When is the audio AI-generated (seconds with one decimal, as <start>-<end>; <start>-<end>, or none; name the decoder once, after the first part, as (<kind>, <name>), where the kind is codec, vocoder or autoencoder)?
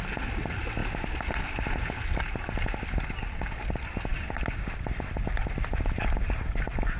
none